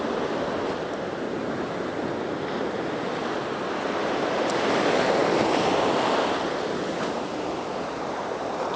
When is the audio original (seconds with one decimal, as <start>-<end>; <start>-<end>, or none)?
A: 0.0-4.0; 4.7-8.8